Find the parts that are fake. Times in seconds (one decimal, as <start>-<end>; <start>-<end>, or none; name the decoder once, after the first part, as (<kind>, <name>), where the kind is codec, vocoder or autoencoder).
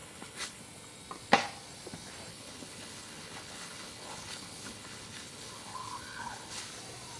0.0-0.6 (codec, HILCodec); 2.3-6.6